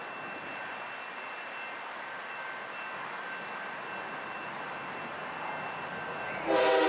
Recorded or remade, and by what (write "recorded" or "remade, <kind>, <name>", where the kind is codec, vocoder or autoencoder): recorded